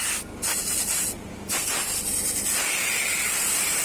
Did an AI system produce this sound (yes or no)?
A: no